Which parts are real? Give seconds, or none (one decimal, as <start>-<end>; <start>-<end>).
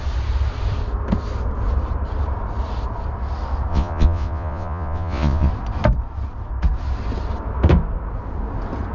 0.0-3.7; 5.5-8.9